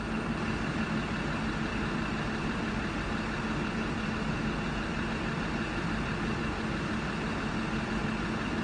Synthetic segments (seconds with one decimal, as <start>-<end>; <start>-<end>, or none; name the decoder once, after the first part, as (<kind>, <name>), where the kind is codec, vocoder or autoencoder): none